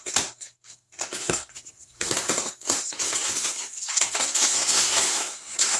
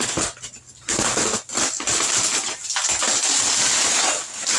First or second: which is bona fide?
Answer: second